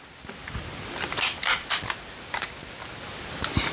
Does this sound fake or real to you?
real